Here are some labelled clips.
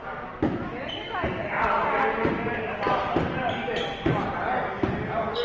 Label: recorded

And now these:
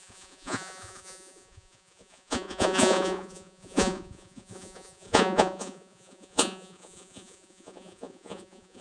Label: remade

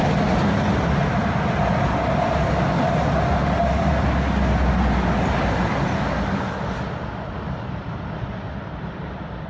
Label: recorded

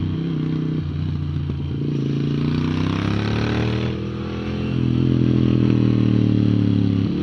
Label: recorded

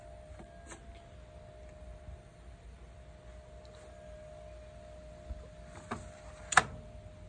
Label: recorded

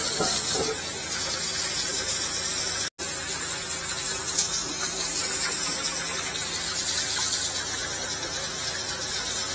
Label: recorded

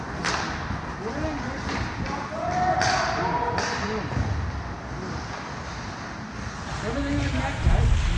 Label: recorded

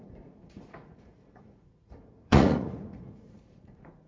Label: remade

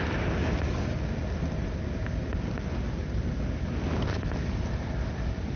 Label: recorded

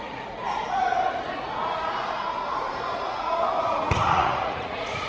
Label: remade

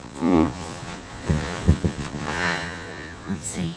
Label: remade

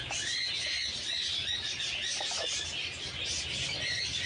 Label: recorded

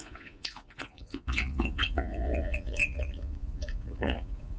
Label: remade